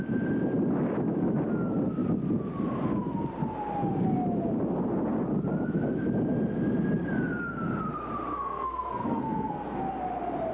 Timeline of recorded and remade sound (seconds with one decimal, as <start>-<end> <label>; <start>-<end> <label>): 0.0-8.3 recorded; 8.3-9.8 remade; 9.8-10.5 recorded